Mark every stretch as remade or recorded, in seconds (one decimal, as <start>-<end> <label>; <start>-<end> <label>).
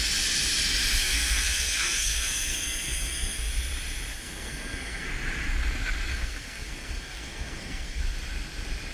0.0-1.0 recorded; 1.0-3.5 remade; 3.5-4.1 recorded; 4.1-5.1 remade; 5.1-6.1 recorded; 6.1-8.0 remade; 8.0-8.9 recorded